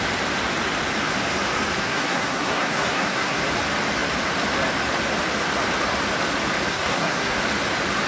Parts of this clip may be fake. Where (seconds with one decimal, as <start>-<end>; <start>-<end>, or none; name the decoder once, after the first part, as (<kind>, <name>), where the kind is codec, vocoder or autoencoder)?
1.8-3.4 (codec, SNAC); 6.7-7.4